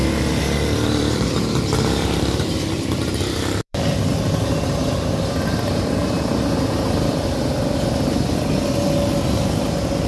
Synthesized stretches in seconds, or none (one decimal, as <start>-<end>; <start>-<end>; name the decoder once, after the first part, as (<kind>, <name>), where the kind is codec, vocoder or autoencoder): 0.0-4.1 (vocoder, BigVGAN v2)